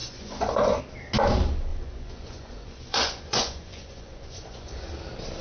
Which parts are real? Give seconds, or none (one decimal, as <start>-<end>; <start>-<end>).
0.8-1.7; 4.9-5.4